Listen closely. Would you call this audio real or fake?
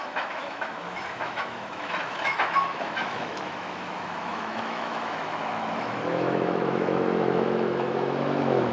fake